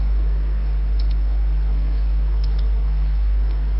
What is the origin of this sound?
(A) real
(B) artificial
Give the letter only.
B